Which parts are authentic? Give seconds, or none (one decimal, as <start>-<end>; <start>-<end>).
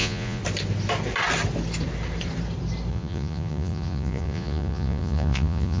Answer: 0.4-2.9